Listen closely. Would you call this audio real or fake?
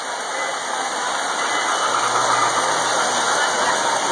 real